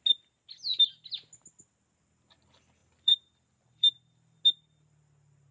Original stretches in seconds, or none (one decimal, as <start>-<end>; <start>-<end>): 0.0-2.8; 4.4-5.5